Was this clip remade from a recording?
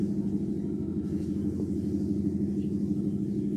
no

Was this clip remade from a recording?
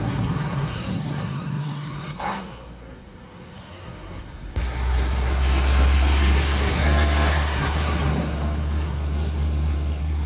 yes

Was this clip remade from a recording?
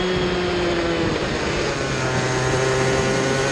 no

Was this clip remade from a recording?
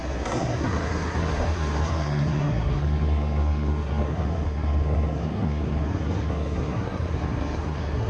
yes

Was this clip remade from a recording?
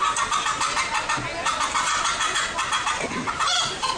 no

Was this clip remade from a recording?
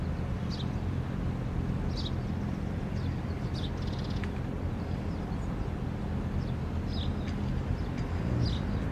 no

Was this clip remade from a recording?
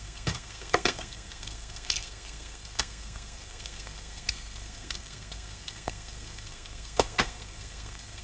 yes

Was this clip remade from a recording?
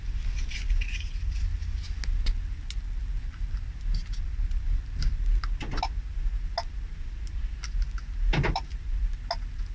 no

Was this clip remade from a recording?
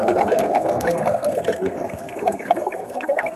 yes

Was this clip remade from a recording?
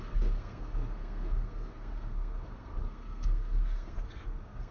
yes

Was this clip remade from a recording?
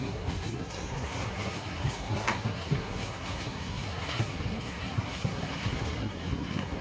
yes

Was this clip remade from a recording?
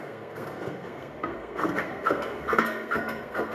yes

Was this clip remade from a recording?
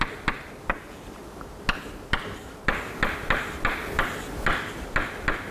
no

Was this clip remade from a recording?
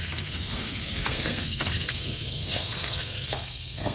yes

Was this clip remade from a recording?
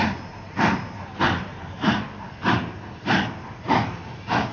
no